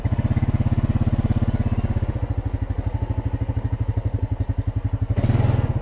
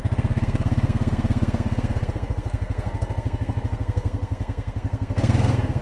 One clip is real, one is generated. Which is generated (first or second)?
second